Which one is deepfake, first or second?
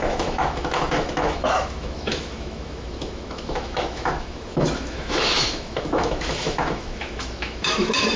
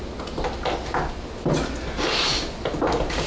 first